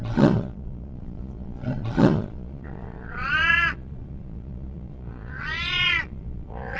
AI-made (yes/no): yes